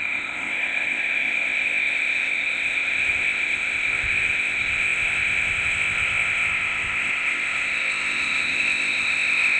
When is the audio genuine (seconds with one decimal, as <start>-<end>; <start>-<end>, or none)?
none